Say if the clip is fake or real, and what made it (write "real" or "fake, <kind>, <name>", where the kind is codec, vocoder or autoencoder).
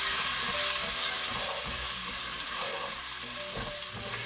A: real